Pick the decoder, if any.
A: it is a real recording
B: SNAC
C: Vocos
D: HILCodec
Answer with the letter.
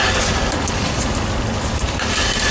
A